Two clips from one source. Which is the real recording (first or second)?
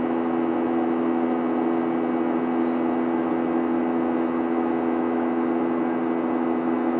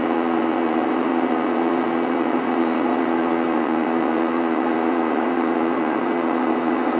first